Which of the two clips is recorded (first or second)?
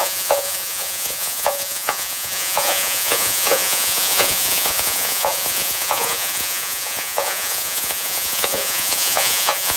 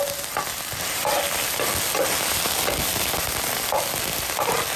second